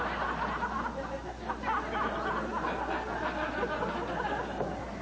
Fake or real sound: real